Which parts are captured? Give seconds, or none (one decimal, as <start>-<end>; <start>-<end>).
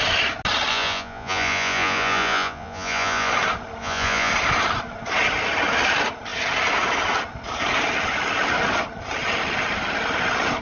0.0-0.7; 3.3-3.8; 4.3-10.6